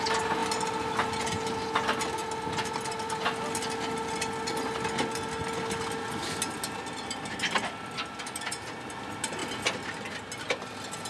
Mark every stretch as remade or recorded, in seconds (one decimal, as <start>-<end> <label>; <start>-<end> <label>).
0.0-11.1 recorded